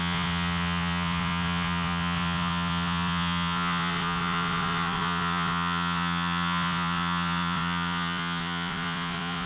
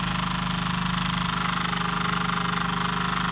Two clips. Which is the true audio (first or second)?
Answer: second